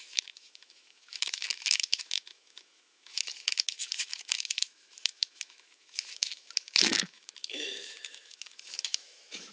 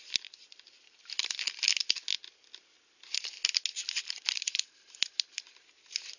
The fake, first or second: first